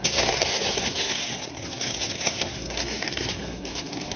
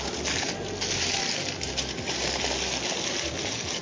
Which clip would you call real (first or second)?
second